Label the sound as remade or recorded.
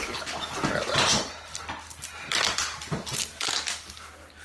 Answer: recorded